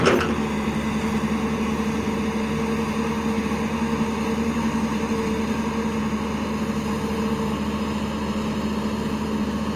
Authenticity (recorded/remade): recorded